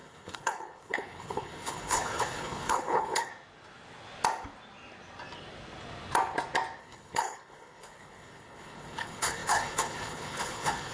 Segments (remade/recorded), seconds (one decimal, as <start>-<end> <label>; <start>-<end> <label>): 0.0-3.3 remade; 3.3-6.8 recorded; 6.8-10.9 remade